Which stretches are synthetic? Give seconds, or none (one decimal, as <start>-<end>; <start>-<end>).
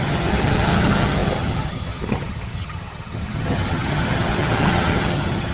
0.0-5.5